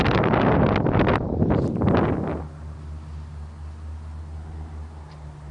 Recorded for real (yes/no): yes